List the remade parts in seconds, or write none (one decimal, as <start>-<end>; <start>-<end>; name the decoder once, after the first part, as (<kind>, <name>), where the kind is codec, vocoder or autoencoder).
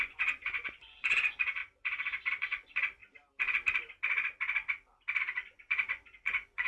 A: 0.0-1.6 (vocoder, Vocos); 2.3-3.0; 5.2-6.7